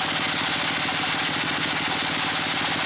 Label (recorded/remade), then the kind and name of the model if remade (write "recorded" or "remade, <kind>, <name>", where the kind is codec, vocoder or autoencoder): recorded